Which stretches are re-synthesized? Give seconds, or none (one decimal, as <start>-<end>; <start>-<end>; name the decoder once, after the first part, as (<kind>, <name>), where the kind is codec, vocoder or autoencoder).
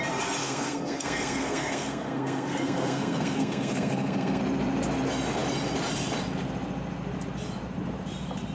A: 0.4-4.4 (codec, SNAC)